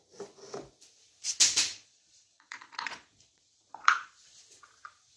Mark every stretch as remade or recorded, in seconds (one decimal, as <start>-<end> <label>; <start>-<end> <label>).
0.0-1.7 recorded; 1.7-4.4 remade; 4.4-5.2 recorded